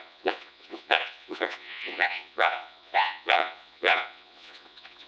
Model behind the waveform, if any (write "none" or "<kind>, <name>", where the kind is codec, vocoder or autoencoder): vocoder, Vocos